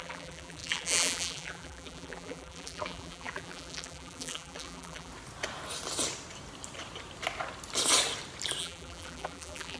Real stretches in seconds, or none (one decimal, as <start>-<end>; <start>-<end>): 5.1-8.6